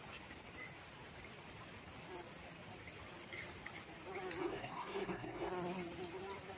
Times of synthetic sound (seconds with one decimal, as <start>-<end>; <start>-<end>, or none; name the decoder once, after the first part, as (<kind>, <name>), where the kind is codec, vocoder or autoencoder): 4.4-5.5 (codec, SNAC)